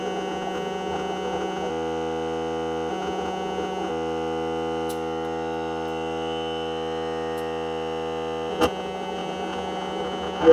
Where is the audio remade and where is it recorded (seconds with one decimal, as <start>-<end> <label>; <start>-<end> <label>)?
0.0-1.7 remade; 1.7-2.9 recorded; 2.9-3.9 remade; 3.9-8.5 recorded; 8.5-10.5 remade